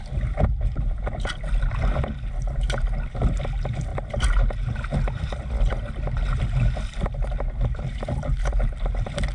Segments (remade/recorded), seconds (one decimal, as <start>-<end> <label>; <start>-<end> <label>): 0.0-9.3 recorded